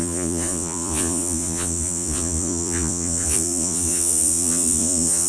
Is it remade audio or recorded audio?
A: remade